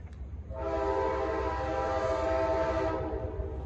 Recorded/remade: recorded